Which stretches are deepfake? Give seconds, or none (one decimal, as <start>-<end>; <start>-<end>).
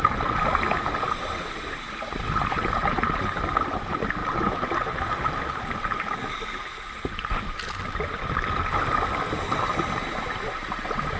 none